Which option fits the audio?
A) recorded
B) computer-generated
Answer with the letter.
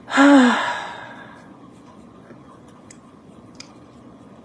B